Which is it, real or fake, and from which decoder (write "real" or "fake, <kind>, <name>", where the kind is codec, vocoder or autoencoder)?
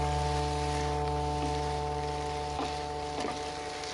real